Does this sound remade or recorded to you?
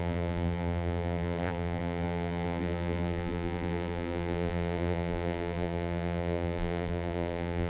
remade